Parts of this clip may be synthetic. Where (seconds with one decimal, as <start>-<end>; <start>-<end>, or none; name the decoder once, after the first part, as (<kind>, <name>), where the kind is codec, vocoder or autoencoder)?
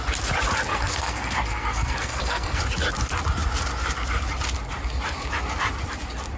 0.7-2.6 (codec, SNAC)